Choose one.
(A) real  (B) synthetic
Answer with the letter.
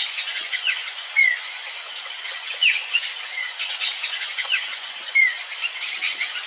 B